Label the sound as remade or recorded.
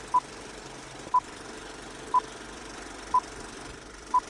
remade